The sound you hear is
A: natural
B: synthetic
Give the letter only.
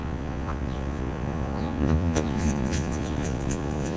B